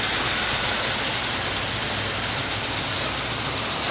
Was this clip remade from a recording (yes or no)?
no